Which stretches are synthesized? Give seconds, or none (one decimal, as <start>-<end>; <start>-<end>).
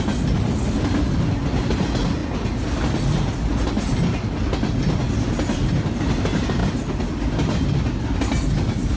none